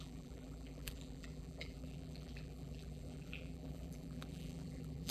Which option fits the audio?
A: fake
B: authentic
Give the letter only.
A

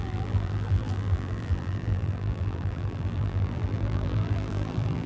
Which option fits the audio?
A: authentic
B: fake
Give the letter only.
B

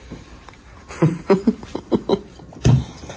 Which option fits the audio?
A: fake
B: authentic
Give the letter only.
A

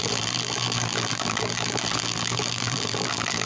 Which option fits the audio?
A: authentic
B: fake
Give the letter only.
B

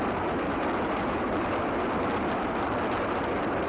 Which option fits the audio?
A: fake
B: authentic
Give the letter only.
B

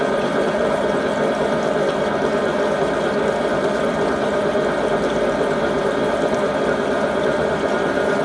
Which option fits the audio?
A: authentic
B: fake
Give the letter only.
B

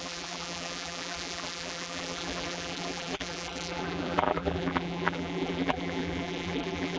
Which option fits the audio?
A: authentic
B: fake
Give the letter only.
B